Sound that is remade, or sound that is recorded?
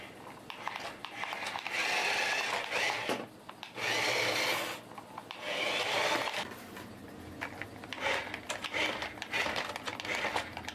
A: recorded